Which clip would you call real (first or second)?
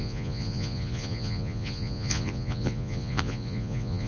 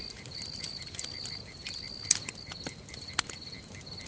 second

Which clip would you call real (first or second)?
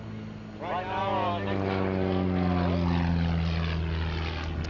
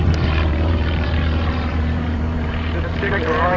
first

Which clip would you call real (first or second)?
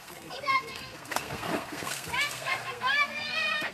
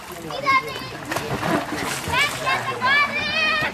second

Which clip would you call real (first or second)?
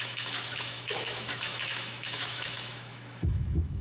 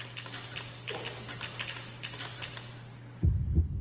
second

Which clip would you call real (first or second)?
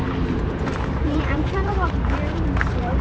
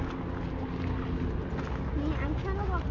second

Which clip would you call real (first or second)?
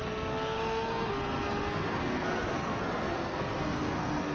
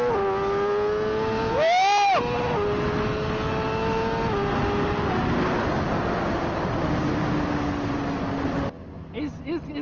second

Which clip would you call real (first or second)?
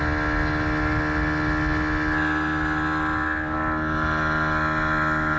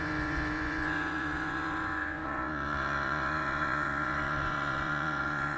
first